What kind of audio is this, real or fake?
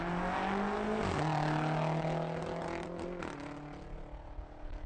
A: real